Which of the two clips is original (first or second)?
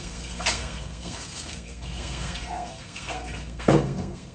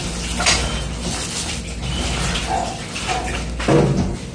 second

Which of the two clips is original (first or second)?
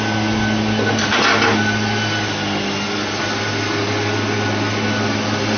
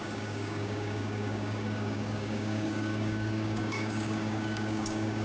first